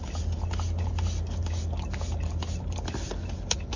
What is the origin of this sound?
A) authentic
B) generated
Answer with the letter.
A